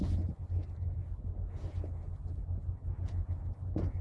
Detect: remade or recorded recorded